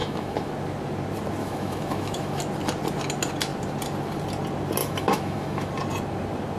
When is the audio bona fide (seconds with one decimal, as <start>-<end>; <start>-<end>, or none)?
0.5-1.4; 2.4-4.8; 5.7-6.6